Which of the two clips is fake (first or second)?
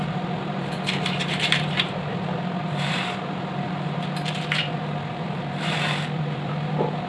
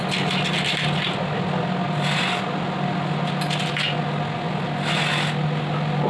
first